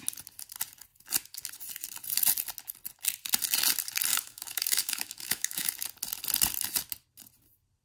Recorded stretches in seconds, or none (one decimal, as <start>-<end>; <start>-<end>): 0.0-4.1; 5.7-7.8